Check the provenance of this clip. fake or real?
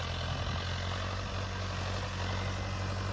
real